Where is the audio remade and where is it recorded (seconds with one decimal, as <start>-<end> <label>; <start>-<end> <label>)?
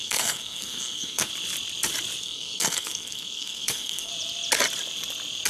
0.0-1.3 remade; 1.3-2.2 recorded; 2.2-4.1 remade; 4.1-5.5 recorded